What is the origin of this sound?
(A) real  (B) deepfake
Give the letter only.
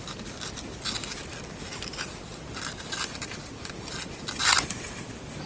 A